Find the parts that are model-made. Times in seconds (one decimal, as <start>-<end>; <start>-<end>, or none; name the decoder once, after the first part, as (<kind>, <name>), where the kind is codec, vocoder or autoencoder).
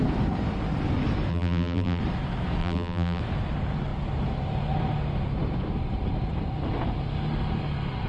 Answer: 1.3-2.0 (vocoder, BigVGAN v2); 2.6-3.2